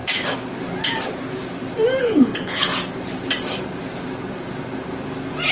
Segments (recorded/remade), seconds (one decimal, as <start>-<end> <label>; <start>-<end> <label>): 0.0-2.0 recorded; 2.0-2.7 remade; 2.7-5.5 recorded